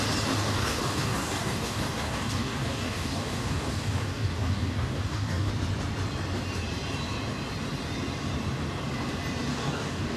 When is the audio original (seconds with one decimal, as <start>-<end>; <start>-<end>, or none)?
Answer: 0.0-0.4; 5.5-9.5